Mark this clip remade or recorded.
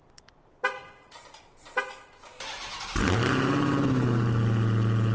recorded